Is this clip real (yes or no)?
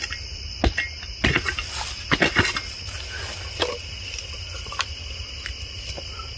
yes